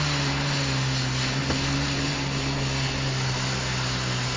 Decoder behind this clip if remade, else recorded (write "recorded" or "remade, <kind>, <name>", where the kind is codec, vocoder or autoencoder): recorded